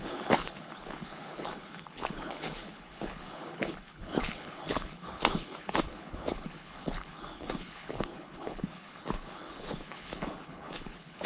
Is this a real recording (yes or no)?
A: no